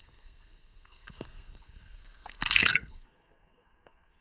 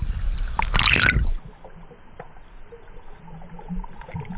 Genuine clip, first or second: second